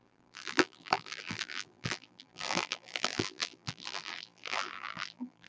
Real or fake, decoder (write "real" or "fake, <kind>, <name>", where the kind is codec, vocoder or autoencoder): fake, vocoder, BigVGAN v2